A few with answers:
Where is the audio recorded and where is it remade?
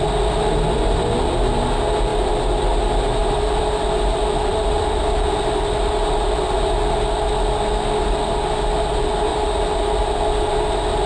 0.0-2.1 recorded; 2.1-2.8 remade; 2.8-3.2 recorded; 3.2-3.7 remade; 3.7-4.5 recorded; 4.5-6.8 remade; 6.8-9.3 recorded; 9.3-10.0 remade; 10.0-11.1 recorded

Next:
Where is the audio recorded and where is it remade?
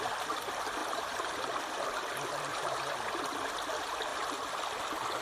0.0-0.8 recorded; 0.8-1.6 remade; 1.6-2.5 recorded; 2.5-3.1 remade; 3.1-5.2 recorded